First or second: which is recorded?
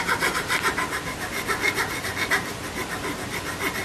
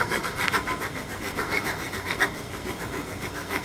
first